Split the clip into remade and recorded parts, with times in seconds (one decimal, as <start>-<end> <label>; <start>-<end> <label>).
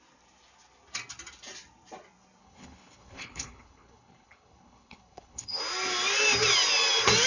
0.0-2.4 recorded; 2.4-5.6 remade; 5.6-7.3 recorded